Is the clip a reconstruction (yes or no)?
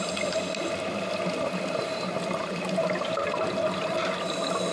no